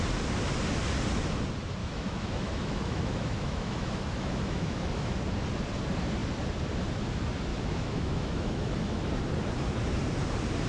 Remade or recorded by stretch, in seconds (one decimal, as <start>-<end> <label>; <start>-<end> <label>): 0.0-1.8 recorded; 1.8-5.2 remade; 5.2-7.5 recorded; 7.5-9.1 remade; 9.1-10.7 recorded